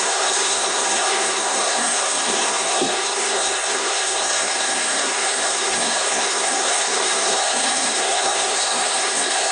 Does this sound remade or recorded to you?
remade